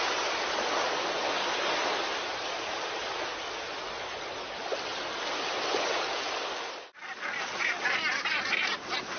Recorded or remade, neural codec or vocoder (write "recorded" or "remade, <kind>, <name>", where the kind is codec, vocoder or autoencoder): recorded